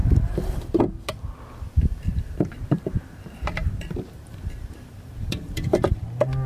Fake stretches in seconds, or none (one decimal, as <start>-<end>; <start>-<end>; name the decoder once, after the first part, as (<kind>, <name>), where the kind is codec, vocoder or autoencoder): 0.0-0.8 (vocoder, BigVGAN v2); 2.1-6.0